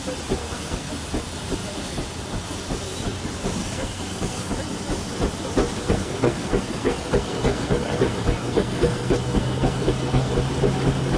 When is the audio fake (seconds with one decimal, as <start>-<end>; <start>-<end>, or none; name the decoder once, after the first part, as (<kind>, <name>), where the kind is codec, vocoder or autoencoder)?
0.4-0.9 (codec, SNAC); 3.6-4.5; 5.8-10.3